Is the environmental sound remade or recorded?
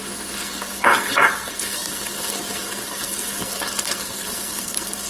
remade